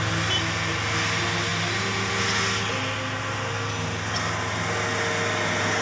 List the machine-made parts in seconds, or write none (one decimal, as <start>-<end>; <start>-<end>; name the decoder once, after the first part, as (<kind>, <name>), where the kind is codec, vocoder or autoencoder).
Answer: none